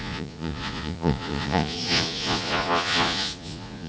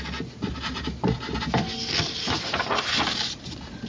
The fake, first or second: first